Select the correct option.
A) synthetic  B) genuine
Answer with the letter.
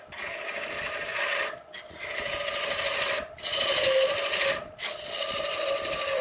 B